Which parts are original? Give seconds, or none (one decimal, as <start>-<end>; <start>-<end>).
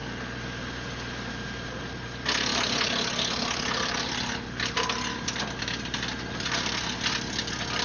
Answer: 0.0-7.8